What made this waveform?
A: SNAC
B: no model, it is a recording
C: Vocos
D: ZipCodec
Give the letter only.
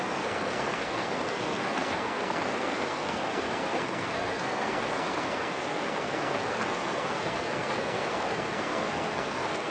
A